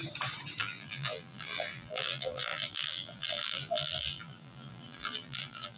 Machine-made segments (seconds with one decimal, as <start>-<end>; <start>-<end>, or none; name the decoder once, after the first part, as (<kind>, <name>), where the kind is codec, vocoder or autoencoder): 0.6-5.8 (vocoder, BigVGAN v2)